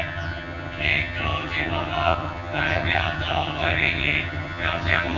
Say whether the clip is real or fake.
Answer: fake